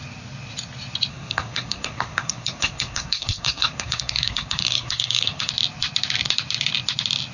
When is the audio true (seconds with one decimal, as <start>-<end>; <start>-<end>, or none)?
0.0-1.1; 5.5-7.3